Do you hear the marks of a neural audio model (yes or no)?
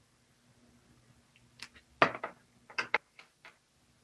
no